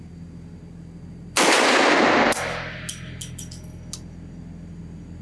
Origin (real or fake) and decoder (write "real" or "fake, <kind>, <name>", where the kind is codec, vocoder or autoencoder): real